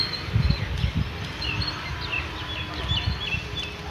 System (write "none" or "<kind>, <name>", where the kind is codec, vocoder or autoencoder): none